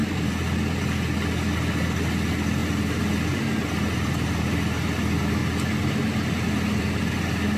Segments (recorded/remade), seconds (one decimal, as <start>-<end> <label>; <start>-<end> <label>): 0.0-7.6 recorded